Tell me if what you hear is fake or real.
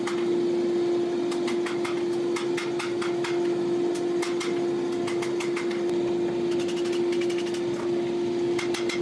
real